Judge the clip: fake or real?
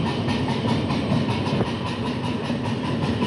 real